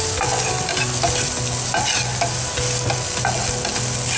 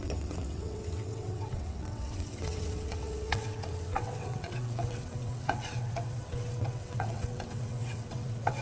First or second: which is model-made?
second